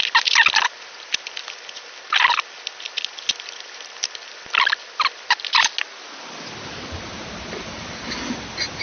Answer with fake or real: real